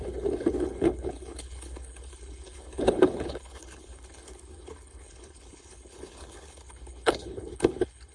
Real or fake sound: fake